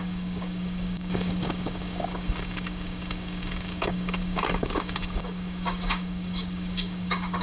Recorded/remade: remade